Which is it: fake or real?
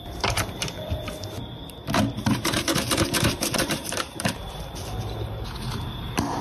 fake